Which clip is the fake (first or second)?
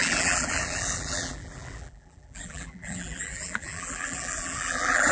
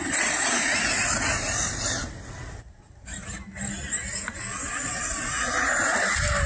first